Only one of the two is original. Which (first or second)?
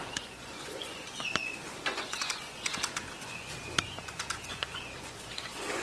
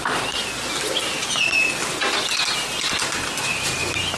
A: second